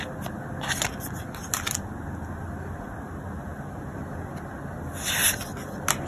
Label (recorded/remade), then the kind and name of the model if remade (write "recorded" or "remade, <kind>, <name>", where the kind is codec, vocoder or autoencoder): recorded